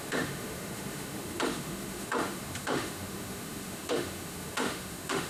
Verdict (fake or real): fake